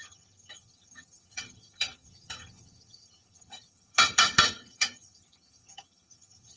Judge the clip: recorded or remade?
remade